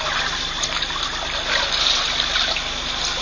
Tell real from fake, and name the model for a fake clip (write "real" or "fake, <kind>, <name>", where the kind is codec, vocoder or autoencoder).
fake, vocoder, BigVGAN v2